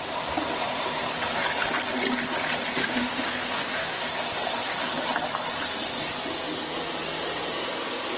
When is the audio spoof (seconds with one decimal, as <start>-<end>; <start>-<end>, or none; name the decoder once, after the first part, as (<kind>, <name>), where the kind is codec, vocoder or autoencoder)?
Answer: 2.8-4.0 (autoencoder, DAC-VAE)